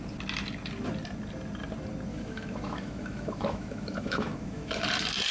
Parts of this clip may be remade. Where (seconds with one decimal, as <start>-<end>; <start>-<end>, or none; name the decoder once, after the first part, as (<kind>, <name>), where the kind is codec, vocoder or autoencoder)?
2.1-4.7 (autoencoder, DAC-VAE)